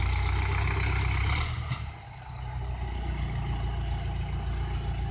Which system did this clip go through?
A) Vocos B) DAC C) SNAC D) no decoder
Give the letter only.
D